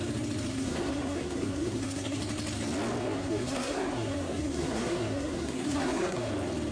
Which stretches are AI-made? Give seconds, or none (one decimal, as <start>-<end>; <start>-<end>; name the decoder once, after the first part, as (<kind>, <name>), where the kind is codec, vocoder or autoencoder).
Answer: 0.5-2.2 (codec, SNAC); 3.0-6.3

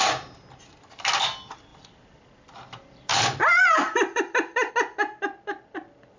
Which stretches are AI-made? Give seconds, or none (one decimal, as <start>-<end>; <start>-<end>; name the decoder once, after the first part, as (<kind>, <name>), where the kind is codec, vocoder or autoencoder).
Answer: 1.7-4.7 (vocoder, BigVGAN v2)

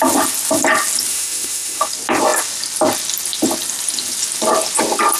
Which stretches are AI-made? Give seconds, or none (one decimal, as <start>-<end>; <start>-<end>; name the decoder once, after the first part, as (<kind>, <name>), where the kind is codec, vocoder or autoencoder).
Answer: 1.1-1.9 (autoencoder, DAC-VAE)

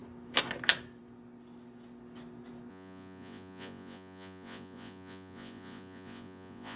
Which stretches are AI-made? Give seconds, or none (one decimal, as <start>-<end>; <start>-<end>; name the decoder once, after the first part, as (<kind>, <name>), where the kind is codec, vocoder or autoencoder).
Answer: 2.7-6.8 (vocoder, Vocos)

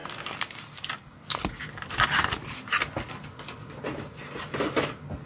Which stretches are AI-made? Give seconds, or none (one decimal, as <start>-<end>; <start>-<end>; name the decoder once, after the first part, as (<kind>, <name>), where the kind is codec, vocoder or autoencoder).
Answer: none